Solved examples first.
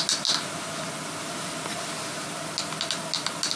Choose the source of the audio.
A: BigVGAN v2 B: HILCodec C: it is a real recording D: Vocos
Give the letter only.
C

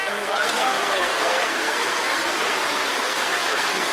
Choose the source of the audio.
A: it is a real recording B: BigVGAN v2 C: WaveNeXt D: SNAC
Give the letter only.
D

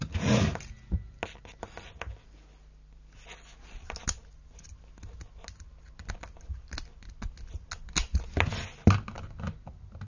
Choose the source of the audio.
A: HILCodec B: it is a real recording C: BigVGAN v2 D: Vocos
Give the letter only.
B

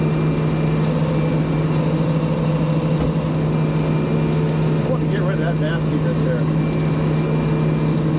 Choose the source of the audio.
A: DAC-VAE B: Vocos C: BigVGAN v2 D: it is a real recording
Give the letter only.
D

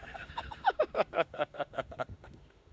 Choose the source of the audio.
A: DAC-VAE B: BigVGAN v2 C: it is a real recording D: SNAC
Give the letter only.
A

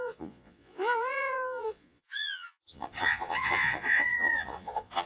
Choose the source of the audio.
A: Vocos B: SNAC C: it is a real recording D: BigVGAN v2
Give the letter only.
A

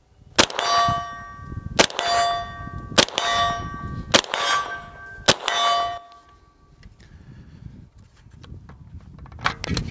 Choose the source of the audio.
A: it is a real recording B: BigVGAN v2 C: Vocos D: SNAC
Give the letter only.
A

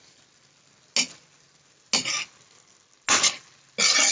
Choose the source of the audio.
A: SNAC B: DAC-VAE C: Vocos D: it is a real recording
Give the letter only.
D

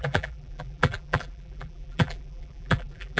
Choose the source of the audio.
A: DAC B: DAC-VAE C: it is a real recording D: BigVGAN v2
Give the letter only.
D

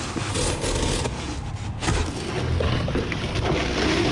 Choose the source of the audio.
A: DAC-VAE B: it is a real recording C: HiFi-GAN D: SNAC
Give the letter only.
B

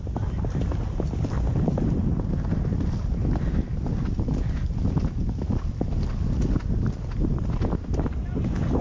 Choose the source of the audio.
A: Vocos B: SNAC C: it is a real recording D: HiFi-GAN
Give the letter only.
C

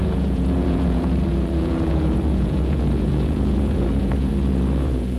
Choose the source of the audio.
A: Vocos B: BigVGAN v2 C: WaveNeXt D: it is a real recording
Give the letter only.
A